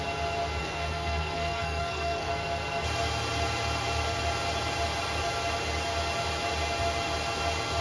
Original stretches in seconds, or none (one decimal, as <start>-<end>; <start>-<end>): 0.0-0.6; 2.3-7.8